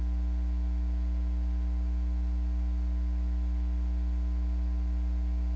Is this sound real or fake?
real